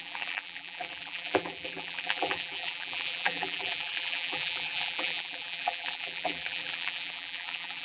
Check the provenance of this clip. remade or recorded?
remade